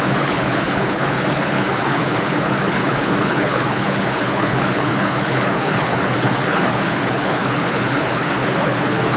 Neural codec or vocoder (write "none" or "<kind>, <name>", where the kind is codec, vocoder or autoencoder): codec, HILCodec